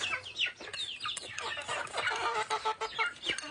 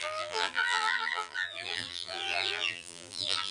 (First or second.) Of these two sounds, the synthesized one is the second